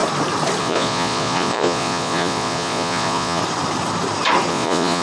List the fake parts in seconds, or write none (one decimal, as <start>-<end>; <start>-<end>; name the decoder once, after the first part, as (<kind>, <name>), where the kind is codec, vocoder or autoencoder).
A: 0.6-3.4 (vocoder, Vocos); 4.5-5.0